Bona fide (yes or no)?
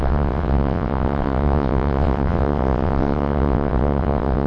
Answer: no